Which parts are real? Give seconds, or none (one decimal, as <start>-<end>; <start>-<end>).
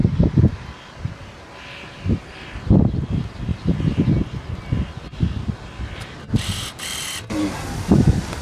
0.0-3.5; 4.1-8.4